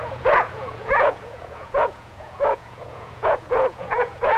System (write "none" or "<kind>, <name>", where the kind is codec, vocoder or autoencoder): vocoder, Vocos